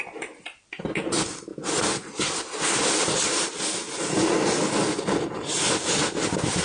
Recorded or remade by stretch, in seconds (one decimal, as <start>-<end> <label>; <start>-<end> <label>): 0.0-6.6 recorded